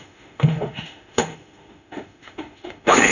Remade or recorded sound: remade